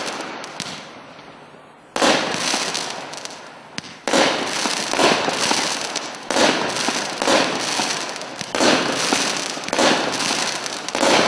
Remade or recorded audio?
recorded